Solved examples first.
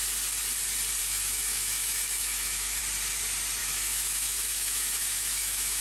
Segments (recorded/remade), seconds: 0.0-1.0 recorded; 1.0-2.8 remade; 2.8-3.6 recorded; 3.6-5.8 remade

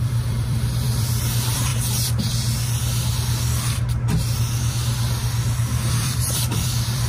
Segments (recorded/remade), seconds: 0.0-1.7 remade; 1.7-5.9 recorded; 5.9-7.1 remade

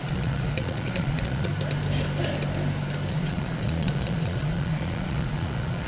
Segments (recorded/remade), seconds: 0.0-1.5 remade; 1.5-3.1 recorded; 3.1-5.9 remade

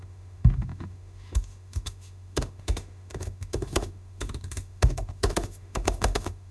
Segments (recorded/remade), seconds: 0.0-6.5 remade

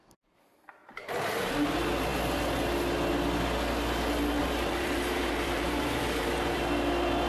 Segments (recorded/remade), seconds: 0.0-0.8 recorded; 0.8-1.5 remade; 1.5-4.4 recorded; 4.4-6.6 remade; 6.6-7.3 recorded

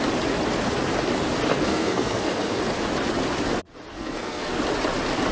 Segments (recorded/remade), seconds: 0.0-1.5 recorded; 1.5-2.6 remade; 2.6-3.9 recorded; 3.9-4.6 remade; 4.6-5.3 recorded